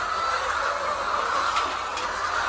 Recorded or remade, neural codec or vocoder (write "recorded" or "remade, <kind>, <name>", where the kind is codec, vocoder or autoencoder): recorded